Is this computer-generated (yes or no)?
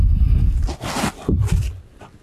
no